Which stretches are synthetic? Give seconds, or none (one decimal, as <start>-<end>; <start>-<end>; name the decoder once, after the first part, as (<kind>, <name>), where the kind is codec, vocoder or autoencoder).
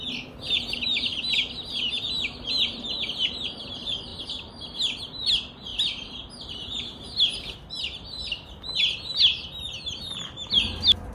none